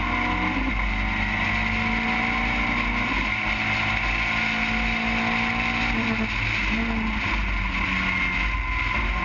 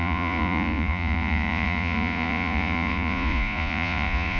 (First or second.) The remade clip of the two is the second